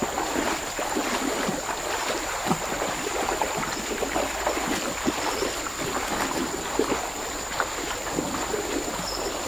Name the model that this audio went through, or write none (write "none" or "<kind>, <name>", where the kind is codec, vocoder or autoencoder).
none